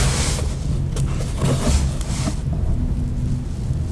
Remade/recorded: recorded